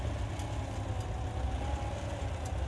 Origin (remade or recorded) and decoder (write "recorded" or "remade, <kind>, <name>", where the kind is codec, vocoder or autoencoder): recorded